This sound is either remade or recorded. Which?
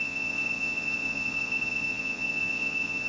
remade